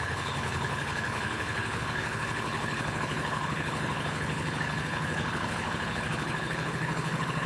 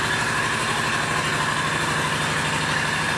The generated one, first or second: first